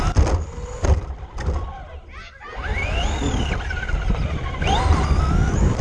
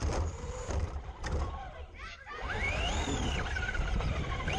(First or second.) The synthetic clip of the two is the second